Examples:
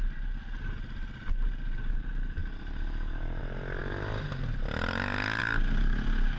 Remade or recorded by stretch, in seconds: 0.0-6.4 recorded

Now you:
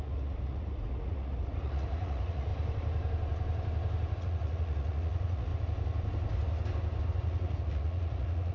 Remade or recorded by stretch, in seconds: 0.0-2.5 remade; 2.5-4.2 recorded; 4.2-5.5 remade; 5.5-7.1 recorded; 7.1-8.5 remade

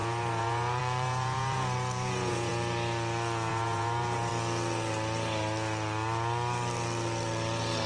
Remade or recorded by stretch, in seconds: 0.0-2.5 remade; 2.5-3.5 recorded; 3.5-4.3 remade; 4.3-7.9 recorded